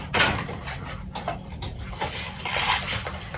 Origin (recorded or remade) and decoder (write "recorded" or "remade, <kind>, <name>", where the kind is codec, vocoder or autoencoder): remade, vocoder, BigVGAN v2